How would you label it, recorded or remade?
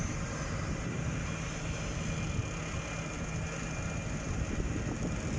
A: recorded